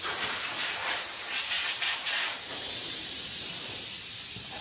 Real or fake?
fake